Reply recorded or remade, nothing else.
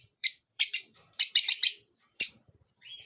remade